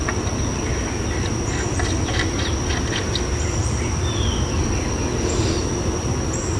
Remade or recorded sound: recorded